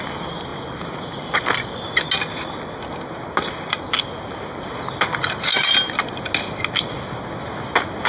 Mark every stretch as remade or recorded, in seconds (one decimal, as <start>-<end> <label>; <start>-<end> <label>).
0.0-8.1 recorded